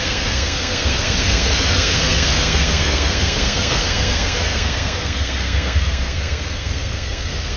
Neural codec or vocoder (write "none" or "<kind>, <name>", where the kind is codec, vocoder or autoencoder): codec, SNAC